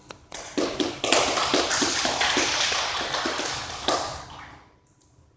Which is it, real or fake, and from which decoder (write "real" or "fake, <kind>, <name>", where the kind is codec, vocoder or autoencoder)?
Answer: real